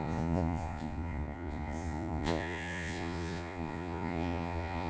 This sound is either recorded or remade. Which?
remade